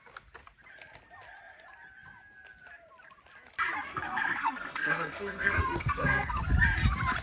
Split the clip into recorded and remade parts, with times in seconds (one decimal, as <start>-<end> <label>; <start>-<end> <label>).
0.0-3.9 recorded; 3.9-6.4 remade; 6.4-7.2 recorded